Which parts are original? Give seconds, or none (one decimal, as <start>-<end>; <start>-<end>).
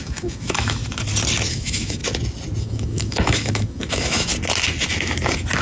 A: 0.8-1.5; 2.0-2.6; 4.3-5.6